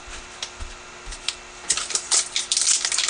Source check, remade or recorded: recorded